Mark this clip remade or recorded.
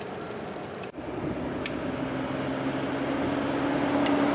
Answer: recorded